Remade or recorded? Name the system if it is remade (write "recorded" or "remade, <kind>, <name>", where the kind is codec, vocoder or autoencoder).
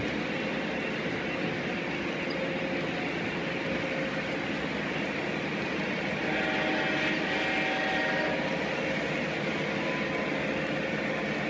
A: recorded